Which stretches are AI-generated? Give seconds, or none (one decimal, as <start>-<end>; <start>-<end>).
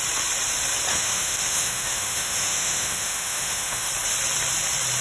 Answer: 0.9-3.9